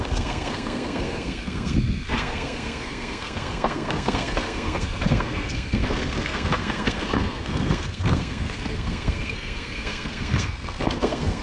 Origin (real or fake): fake